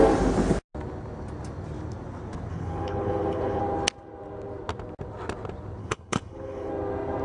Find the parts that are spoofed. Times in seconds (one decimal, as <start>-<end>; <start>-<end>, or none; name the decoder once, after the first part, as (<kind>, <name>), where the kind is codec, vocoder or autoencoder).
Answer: 2.5-3.6 (codec, HILCodec); 5.8-6.7